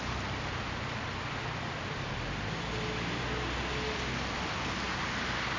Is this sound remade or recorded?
recorded